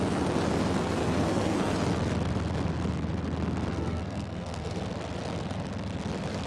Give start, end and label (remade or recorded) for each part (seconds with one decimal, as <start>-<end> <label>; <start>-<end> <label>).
0.0-0.8 recorded; 0.8-1.7 remade; 1.7-3.7 recorded; 3.7-4.8 remade; 4.8-6.5 recorded